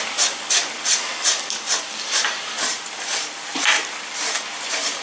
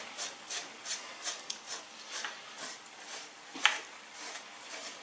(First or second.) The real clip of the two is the first